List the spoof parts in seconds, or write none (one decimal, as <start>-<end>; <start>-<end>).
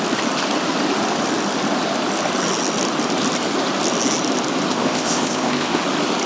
4.7-5.8